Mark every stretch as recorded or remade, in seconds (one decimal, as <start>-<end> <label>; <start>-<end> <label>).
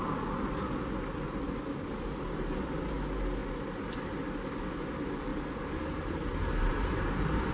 0.0-5.3 recorded; 5.3-7.5 remade